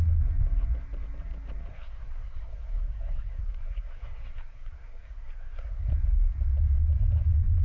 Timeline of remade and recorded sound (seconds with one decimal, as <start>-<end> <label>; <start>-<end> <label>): 0.0-1.7 recorded; 1.7-5.9 remade; 5.9-7.6 recorded